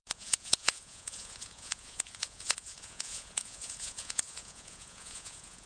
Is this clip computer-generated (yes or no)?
yes